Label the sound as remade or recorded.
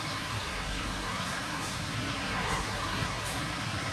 remade